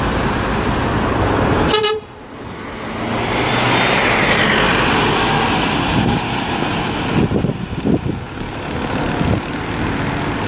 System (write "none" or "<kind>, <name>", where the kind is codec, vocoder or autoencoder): none